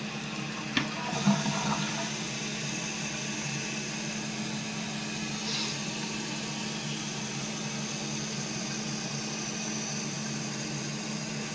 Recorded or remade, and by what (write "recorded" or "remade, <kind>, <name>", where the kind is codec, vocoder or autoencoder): recorded